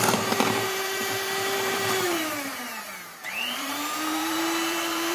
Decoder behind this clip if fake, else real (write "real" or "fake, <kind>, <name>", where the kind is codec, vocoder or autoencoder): fake, vocoder, BigVGAN v2